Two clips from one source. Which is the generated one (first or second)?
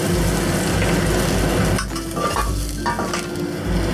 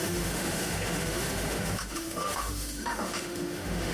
second